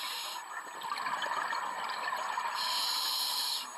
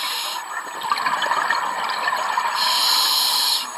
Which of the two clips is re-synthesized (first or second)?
second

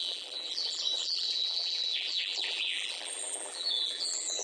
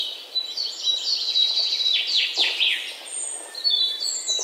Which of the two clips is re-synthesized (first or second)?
first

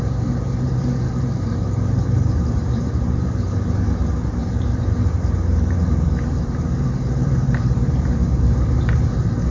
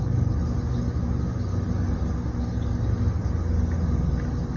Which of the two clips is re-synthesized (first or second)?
first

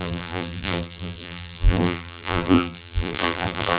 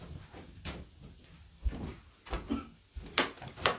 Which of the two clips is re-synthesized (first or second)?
first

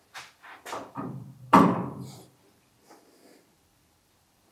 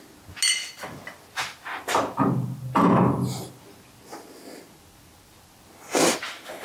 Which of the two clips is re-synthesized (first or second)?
first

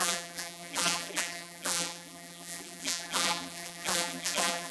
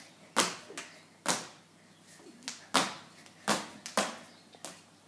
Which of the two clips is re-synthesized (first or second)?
first